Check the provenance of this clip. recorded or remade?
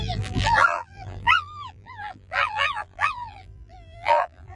remade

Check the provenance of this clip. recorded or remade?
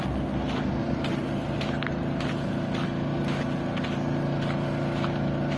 recorded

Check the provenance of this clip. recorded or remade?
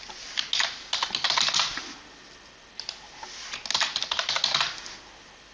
recorded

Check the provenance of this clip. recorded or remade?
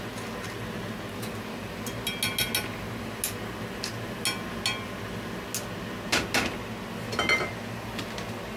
recorded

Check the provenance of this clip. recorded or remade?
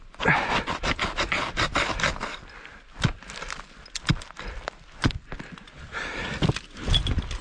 recorded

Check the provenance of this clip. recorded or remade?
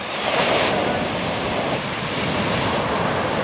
recorded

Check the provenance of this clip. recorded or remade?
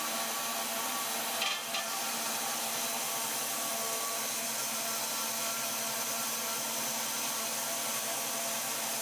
remade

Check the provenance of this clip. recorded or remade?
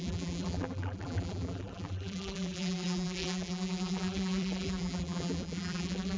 remade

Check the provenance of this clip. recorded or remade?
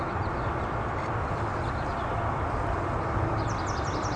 remade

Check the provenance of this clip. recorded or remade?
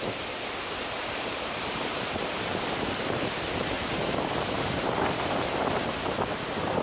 remade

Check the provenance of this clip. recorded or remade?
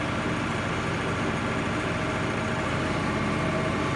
recorded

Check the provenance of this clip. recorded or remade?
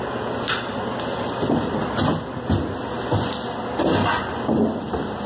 recorded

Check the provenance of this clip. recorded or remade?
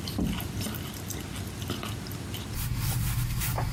recorded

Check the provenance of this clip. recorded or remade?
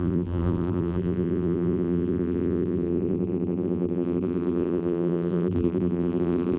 remade